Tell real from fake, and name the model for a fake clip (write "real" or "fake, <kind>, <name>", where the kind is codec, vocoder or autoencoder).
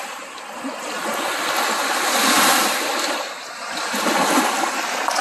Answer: real